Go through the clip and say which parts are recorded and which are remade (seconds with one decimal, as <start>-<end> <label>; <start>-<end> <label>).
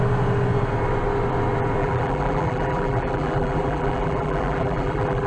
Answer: 0.0-1.8 recorded; 1.8-5.3 remade